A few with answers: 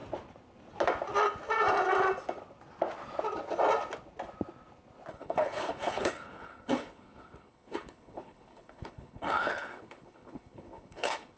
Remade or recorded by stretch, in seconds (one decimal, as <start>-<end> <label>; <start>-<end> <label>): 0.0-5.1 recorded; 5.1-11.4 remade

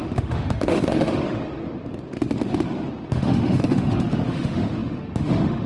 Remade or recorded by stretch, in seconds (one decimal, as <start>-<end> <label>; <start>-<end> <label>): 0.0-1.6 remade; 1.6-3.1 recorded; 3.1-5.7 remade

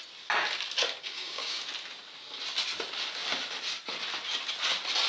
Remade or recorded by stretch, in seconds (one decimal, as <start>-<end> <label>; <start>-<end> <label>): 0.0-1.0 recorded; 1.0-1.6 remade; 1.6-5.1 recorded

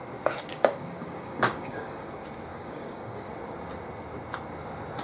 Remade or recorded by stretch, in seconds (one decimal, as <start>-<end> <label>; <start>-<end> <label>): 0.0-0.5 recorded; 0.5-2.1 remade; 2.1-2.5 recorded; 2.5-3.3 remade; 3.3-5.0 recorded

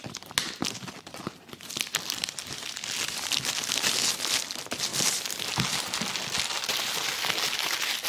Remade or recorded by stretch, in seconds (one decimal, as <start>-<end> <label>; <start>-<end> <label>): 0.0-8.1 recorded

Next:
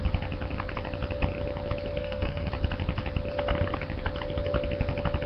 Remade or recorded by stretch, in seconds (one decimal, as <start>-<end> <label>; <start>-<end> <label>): 0.0-2.0 recorded; 2.0-2.5 remade; 2.5-5.3 recorded